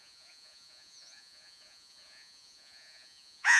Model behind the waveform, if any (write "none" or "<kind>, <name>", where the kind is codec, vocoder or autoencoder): vocoder, Vocos